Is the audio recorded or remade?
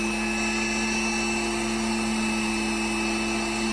recorded